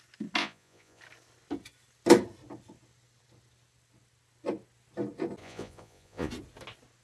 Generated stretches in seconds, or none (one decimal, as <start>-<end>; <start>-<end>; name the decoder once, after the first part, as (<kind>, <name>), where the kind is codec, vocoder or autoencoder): 0.4-1.0 (vocoder, Vocos); 5.4-6.3